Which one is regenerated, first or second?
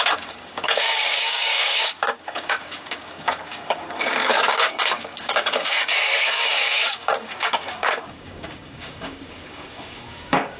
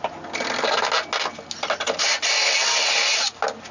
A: first